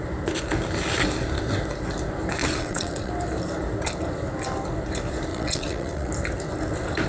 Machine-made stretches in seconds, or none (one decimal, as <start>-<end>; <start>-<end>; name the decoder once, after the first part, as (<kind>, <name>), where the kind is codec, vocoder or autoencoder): 2.4-3.1 (vocoder, WaveNeXt); 5.3-6.1